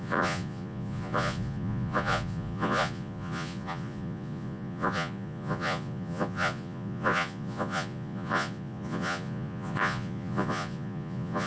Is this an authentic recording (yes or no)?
no